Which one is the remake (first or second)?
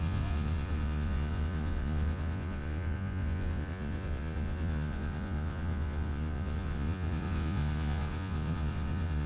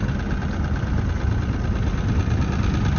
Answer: first